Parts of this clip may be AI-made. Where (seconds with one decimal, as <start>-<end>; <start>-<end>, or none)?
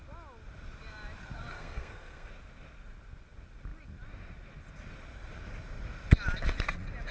1.5-2.3